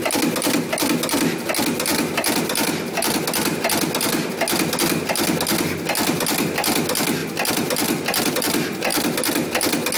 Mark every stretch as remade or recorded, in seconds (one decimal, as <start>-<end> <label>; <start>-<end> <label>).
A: 0.0-10.0 recorded